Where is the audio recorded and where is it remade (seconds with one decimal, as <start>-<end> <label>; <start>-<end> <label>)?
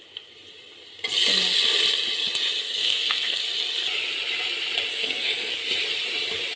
0.0-2.6 recorded; 2.6-3.4 remade; 3.4-4.9 recorded; 4.9-5.5 remade; 5.5-6.6 recorded